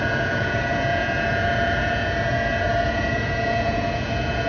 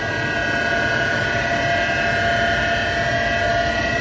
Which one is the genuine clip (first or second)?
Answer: second